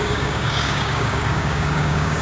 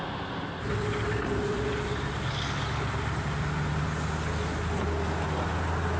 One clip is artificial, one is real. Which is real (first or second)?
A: second